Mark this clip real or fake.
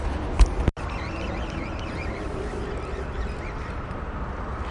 real